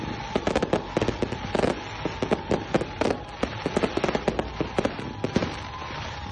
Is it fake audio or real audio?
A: real